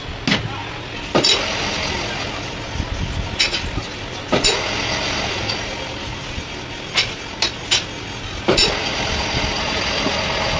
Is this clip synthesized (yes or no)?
no